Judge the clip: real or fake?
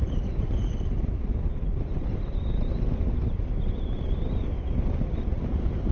real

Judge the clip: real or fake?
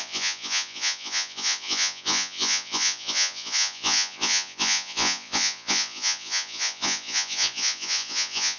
fake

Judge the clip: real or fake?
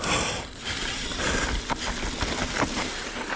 real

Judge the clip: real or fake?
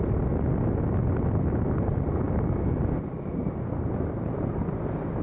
real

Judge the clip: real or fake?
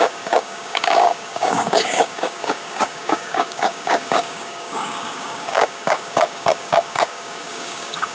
fake